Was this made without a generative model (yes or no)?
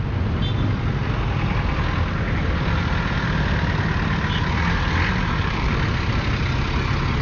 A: yes